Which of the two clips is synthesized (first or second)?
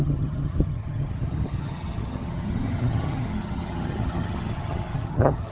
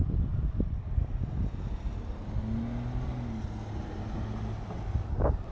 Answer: first